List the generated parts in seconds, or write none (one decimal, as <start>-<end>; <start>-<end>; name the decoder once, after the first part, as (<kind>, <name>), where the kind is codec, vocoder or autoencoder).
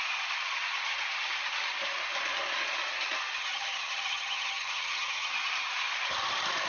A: 3.4-5.3 (vocoder, HiFi-GAN)